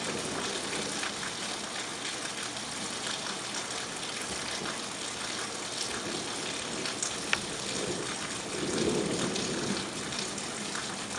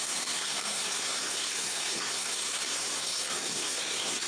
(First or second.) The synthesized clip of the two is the second